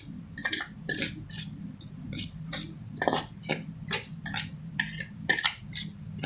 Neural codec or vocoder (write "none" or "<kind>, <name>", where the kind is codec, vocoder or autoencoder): none